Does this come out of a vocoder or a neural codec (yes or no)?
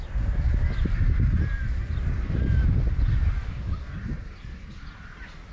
no